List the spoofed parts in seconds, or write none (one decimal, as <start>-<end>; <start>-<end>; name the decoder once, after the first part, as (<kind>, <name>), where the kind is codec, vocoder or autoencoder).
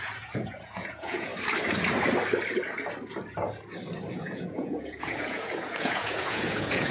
0.0-1.3 (vocoder, Vocos); 4.1-6.9